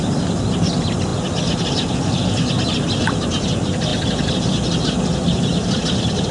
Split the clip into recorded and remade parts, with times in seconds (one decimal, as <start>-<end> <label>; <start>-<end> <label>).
0.0-6.3 recorded